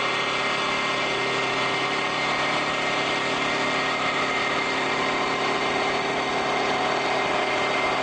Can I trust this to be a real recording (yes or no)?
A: yes